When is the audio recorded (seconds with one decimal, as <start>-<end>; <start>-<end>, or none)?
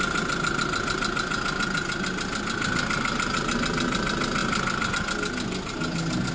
0.0-6.3